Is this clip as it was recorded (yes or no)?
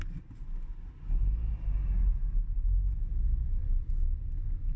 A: yes